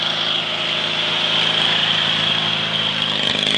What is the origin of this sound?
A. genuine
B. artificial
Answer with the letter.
A